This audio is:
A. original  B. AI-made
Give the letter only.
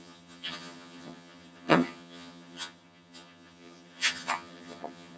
B